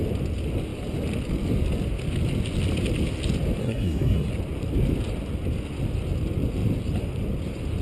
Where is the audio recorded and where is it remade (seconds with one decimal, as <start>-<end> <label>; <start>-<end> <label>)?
0.0-3.6 recorded; 3.6-4.3 remade; 4.3-7.8 recorded